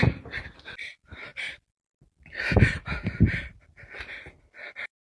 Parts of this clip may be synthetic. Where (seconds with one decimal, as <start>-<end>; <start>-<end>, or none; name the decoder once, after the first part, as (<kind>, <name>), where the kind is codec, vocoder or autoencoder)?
none